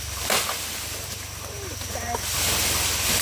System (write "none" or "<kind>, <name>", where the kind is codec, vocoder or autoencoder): none